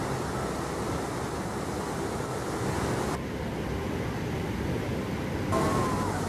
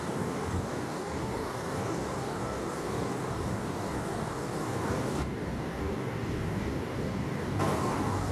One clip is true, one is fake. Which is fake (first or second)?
second